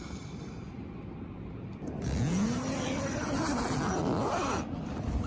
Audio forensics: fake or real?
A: real